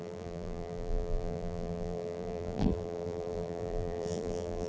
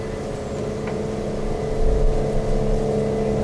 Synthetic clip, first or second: first